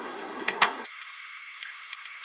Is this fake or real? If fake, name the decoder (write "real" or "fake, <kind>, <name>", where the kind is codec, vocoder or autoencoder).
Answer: fake, codec, SNAC